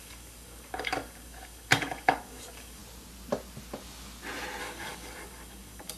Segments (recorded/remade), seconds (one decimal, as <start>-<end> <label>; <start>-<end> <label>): 0.0-2.8 remade; 2.8-4.6 recorded; 4.6-6.0 remade

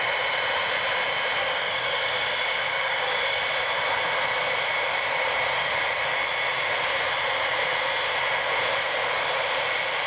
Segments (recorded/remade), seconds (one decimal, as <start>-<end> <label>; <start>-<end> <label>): 0.0-1.4 recorded; 1.4-3.4 remade; 3.4-10.1 recorded

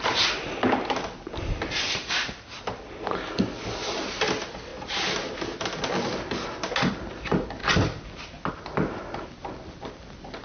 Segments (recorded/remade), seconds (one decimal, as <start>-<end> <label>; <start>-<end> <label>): 0.0-10.4 recorded

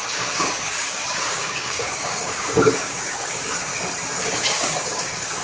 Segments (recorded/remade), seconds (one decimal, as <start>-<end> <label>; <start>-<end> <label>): 0.0-3.7 remade; 3.7-4.2 recorded; 4.2-5.4 remade

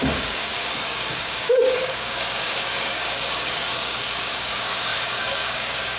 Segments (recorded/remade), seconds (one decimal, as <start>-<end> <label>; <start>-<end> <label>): 0.0-6.0 remade

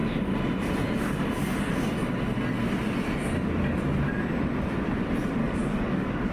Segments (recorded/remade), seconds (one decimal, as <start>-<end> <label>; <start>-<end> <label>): 0.0-5.4 recorded; 5.4-6.3 remade